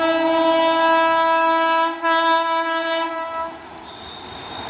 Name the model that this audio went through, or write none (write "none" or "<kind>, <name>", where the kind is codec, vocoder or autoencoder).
none